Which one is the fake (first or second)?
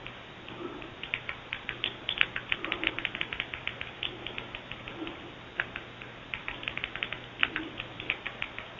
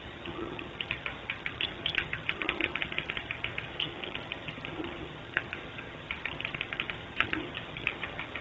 second